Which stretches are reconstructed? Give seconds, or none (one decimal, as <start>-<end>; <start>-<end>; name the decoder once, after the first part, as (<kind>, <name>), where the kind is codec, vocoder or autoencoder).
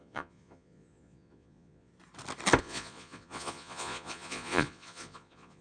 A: 0.0-1.9 (vocoder, Vocos); 2.6-5.6